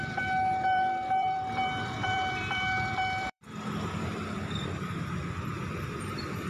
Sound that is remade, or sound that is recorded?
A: remade